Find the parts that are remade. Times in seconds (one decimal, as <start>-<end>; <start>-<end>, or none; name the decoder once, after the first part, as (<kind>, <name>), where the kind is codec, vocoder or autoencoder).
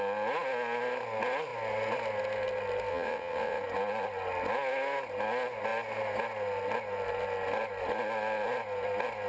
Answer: 2.9-3.6 (vocoder, WaveNeXt)